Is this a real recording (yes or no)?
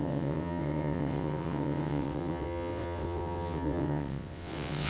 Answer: no